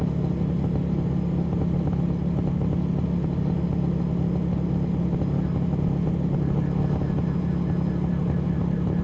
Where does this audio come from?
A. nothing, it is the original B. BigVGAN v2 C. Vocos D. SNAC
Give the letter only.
A